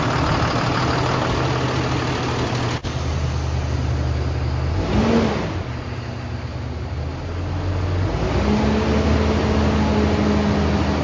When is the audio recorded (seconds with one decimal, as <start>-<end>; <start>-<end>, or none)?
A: 0.0-11.0